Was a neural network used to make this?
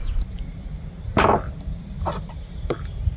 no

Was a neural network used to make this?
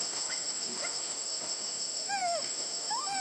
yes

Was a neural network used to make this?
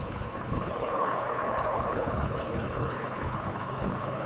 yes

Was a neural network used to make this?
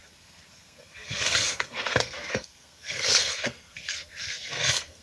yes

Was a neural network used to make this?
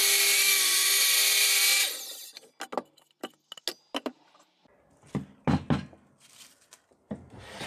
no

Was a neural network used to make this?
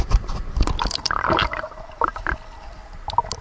no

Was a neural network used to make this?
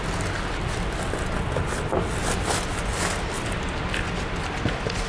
no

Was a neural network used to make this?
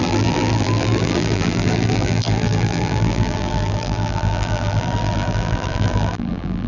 yes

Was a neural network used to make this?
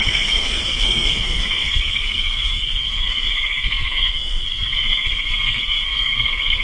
yes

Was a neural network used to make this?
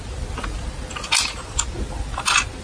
no